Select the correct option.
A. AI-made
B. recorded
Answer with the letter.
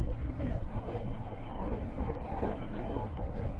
A